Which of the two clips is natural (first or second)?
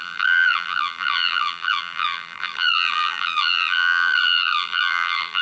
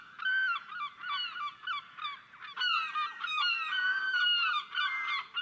second